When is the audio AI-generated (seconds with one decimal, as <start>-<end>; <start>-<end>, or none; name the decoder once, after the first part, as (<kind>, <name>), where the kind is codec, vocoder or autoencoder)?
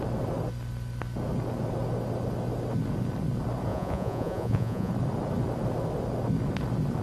3.7-4.9 (vocoder, Vocos)